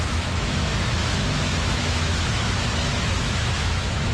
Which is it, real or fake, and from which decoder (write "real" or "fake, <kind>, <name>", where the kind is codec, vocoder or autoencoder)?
fake, autoencoder, DAC-VAE